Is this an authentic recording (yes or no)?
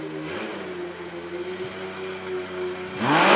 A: yes